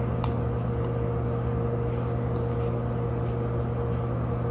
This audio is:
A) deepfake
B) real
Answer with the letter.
B